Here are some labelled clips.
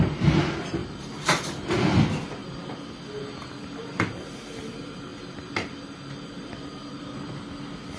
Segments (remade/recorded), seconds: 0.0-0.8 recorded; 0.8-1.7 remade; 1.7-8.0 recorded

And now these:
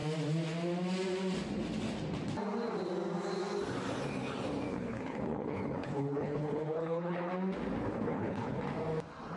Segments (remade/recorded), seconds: 0.0-4.7 recorded; 4.7-7.3 remade; 7.3-7.9 recorded; 7.9-8.6 remade; 8.6-9.4 recorded

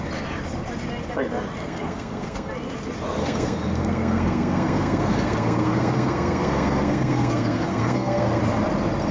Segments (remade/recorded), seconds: 0.0-1.6 recorded; 1.6-2.5 remade; 2.5-3.2 recorded; 3.2-8.4 remade; 8.4-9.1 recorded

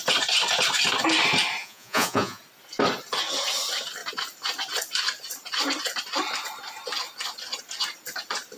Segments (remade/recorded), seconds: 0.0-1.6 recorded; 1.6-2.4 remade; 2.4-8.6 recorded

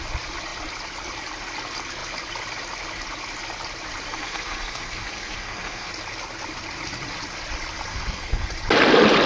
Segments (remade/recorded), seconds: 0.0-4.1 recorded; 4.1-5.9 remade; 5.9-7.9 recorded; 7.9-8.5 remade; 8.5-9.3 recorded

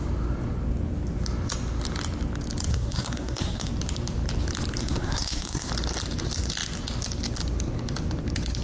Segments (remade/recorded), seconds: 0.0-2.7 recorded; 2.7-3.7 remade; 3.7-4.8 recorded; 4.8-5.7 remade; 5.7-8.6 recorded